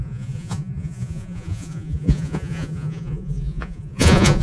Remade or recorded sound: remade